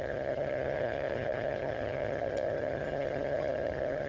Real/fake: fake